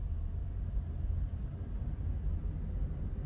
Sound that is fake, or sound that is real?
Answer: real